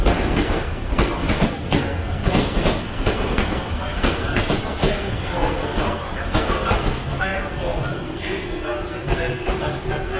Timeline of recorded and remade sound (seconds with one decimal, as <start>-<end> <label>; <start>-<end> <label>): 0.0-10.2 remade